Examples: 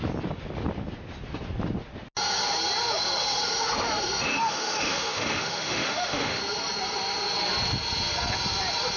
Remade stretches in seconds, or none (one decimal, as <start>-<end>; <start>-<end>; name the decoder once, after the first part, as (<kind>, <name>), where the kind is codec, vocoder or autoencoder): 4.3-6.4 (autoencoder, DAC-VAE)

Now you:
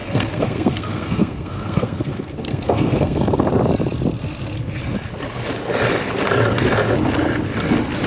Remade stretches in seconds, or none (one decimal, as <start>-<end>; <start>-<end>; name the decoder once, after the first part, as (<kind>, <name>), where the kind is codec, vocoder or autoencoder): 0.0-3.5 (codec, SNAC)

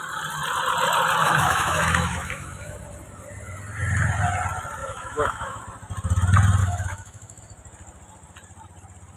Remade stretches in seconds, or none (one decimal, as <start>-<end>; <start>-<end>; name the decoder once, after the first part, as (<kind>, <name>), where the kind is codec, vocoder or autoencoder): 1.2-2.8 (autoencoder, DAC-VAE); 4.8-5.6; 6.6-7.4

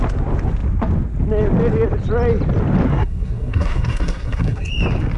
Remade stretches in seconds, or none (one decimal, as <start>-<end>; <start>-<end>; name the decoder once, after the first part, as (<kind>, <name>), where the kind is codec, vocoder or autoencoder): 2.9-4.7 (codec, SNAC)

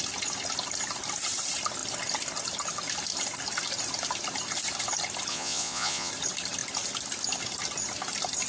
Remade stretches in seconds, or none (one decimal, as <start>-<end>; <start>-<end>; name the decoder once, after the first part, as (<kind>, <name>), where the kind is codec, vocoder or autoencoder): 5.3-6.1 (vocoder, Vocos)

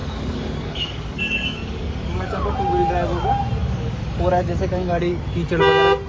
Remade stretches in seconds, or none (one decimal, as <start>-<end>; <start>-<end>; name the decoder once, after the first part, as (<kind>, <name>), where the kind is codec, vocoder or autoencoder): 0.0-2.5 (codec, DAC); 3.6-5.2

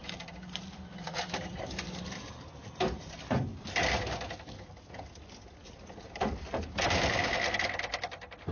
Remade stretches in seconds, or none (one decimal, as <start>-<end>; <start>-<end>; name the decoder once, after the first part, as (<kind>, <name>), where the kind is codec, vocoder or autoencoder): 0.0-2.3 (vocoder, BigVGAN v2)

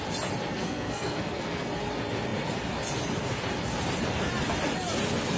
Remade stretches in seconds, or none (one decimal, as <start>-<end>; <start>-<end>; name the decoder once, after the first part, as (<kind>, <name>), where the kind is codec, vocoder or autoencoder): 0.5-1.7 (codec, SNAC)